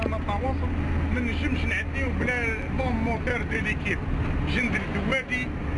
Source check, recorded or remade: recorded